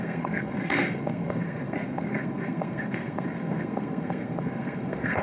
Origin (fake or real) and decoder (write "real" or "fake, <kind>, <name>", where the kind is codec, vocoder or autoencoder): fake, codec, SNAC